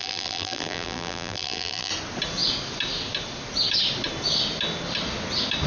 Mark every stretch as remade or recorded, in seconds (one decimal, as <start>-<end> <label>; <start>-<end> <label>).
0.0-1.9 remade; 1.9-5.7 recorded